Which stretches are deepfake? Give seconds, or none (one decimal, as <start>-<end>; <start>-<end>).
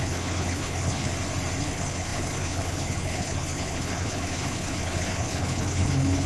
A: 0.0-1.1; 1.6-6.3